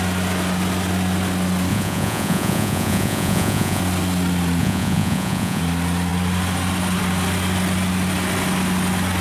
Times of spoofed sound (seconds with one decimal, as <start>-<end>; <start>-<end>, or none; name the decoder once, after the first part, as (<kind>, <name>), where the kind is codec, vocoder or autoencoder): 1.7-3.8 (vocoder, Vocos); 4.6-5.6